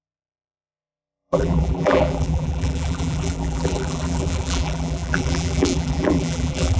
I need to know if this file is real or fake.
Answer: fake